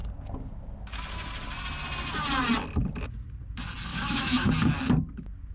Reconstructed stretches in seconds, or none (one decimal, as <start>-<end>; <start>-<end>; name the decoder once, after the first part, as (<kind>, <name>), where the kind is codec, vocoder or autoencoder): 3.9-4.5 (autoencoder, DAC-VAE)